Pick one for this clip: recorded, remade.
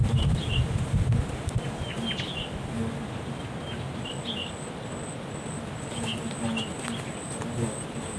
recorded